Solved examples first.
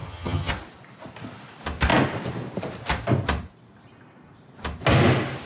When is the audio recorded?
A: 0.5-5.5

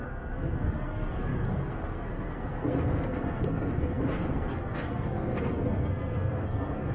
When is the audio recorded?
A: none

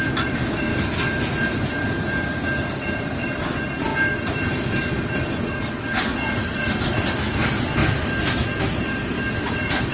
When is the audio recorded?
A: 0.7-1.5; 3.9-6.0; 7.8-8.6

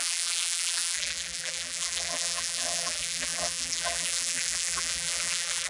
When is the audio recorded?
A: none

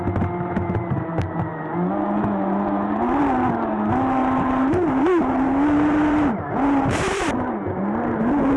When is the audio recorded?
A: 0.0-4.2; 7.5-8.6

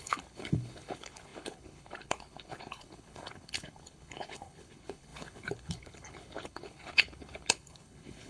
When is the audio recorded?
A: none